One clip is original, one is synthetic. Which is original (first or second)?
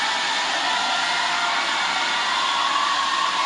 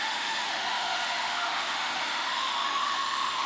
first